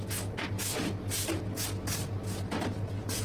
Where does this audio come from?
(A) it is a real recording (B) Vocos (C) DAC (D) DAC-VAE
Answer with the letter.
A